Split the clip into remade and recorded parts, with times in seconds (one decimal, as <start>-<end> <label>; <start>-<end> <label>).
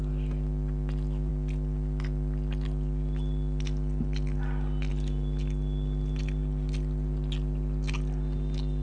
0.0-8.8 recorded